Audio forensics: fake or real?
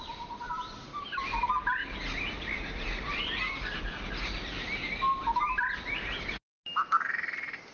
real